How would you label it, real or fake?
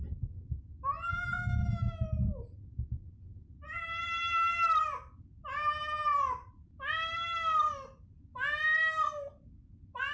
real